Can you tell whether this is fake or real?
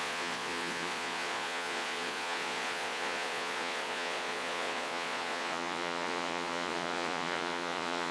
fake